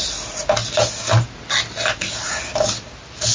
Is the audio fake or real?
real